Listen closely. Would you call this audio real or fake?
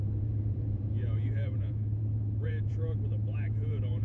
fake